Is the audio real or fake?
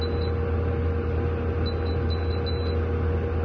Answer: real